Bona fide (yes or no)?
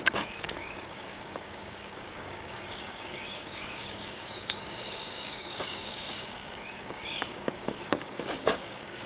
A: no